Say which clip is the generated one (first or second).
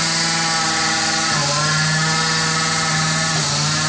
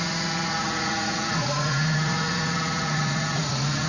second